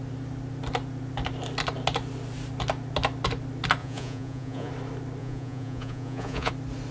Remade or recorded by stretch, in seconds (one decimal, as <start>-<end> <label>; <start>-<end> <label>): 0.0-3.8 recorded; 3.8-4.7 remade; 4.7-5.2 recorded; 5.2-6.5 remade; 6.5-6.9 recorded